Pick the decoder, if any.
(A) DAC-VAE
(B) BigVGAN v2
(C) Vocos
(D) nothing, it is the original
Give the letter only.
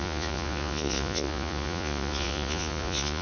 C